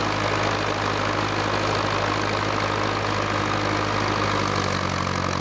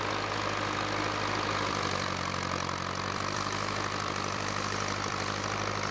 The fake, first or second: second